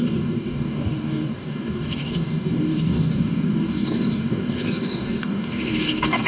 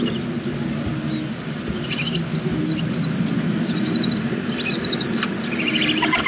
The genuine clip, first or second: second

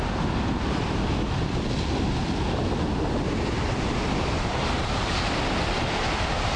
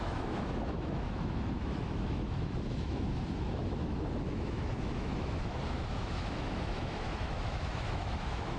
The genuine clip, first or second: first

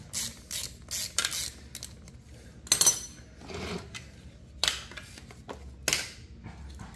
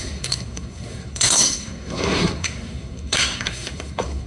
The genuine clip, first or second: first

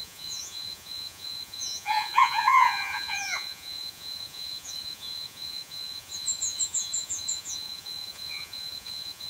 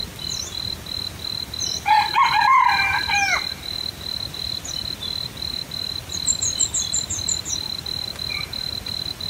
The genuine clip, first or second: second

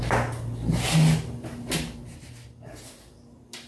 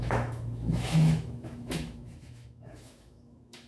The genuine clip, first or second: first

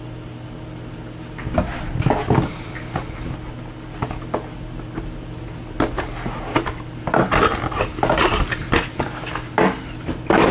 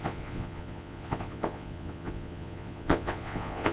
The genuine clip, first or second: first